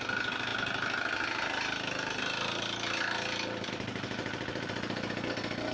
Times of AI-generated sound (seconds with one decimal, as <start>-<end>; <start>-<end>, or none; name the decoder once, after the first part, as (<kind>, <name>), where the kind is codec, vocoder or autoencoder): none